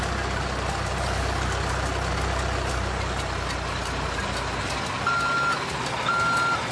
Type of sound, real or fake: real